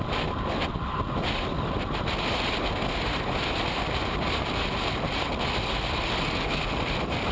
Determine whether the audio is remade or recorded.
recorded